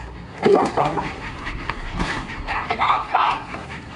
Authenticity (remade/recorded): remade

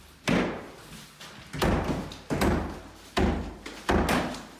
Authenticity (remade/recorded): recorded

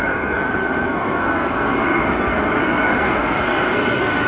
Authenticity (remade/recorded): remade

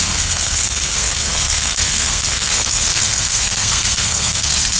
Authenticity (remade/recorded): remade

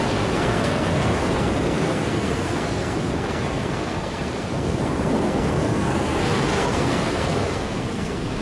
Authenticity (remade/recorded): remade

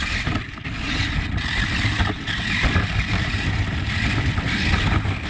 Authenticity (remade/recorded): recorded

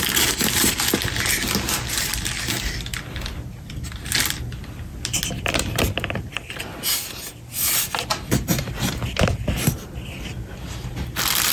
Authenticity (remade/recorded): recorded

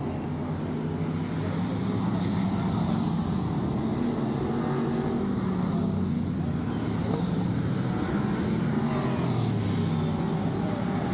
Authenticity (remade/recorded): recorded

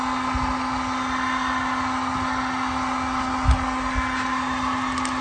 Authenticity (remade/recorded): recorded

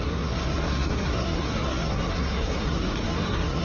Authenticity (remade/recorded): remade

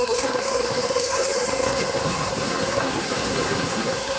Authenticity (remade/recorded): remade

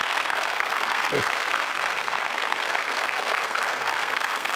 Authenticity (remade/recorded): remade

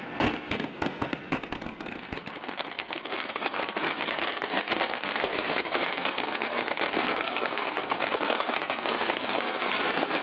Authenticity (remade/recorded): remade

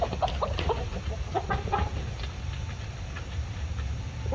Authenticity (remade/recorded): recorded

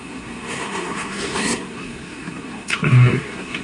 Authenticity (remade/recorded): remade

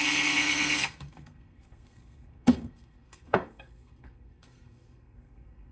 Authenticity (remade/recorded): remade